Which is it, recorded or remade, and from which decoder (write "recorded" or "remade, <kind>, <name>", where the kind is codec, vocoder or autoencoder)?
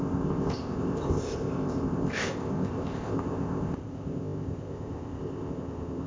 remade, codec, ZipCodec